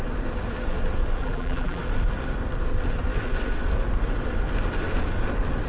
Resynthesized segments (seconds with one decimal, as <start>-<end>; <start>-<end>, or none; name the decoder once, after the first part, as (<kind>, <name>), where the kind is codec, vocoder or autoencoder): 1.2-1.8 (vocoder, BigVGAN v2)